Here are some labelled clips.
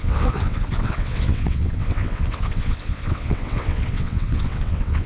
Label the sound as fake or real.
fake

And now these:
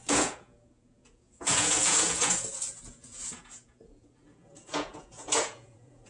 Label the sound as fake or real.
fake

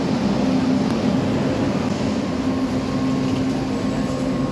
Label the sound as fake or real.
real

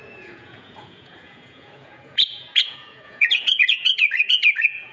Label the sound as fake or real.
fake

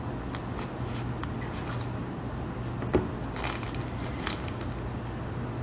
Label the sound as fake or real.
real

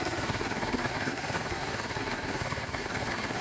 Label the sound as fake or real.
fake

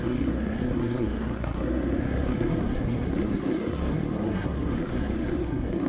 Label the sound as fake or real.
fake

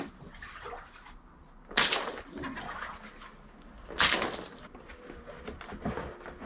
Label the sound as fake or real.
real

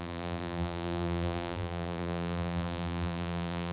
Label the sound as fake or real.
fake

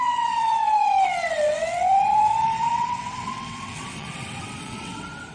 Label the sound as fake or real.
fake